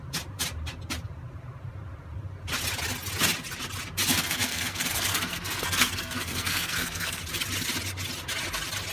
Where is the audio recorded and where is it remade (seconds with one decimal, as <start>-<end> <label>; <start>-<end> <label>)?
0.0-4.1 recorded; 4.1-7.2 remade; 7.2-8.9 recorded